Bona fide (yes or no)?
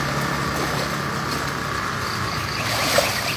yes